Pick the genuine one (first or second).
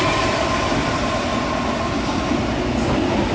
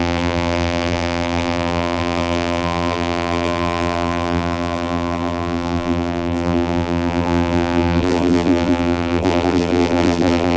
first